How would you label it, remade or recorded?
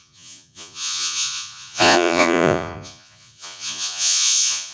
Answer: remade